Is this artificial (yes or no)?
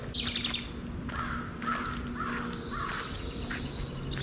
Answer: no